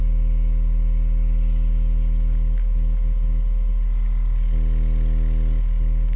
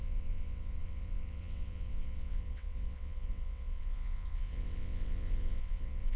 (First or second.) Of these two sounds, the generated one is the second